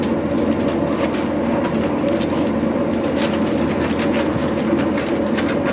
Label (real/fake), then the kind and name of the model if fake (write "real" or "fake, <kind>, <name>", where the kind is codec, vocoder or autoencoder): real